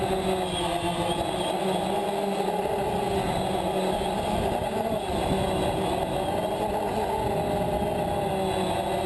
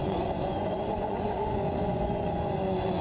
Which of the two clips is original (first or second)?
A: first